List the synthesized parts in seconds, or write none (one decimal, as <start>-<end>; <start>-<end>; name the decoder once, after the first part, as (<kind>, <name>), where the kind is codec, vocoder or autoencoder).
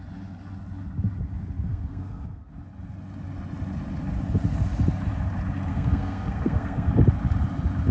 1.7-2.5 (codec, SNAC); 5.7-6.9